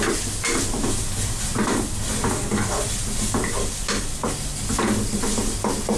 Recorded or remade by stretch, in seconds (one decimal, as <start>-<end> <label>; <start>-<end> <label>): 0.0-6.0 recorded